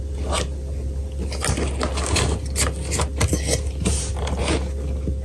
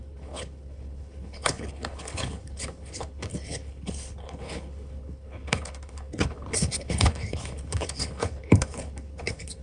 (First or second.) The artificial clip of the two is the second